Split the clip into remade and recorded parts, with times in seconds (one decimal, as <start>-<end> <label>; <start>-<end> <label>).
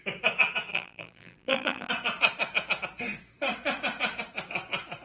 0.0-0.7 recorded; 0.7-1.9 remade; 1.9-5.0 recorded